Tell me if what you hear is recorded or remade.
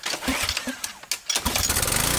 recorded